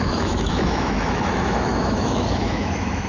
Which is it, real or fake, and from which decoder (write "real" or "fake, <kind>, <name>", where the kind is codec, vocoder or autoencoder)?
fake, autoencoder, DAC-VAE